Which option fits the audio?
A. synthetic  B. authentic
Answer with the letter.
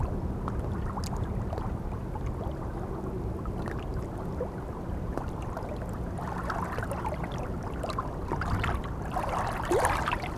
B